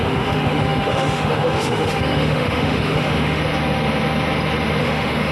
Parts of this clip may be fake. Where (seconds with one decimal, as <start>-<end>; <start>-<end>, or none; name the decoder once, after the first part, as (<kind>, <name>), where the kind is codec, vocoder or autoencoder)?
0.0-3.4 (autoencoder, DAC-VAE); 4.8-5.3